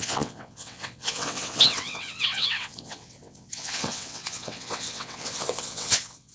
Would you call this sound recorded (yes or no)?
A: no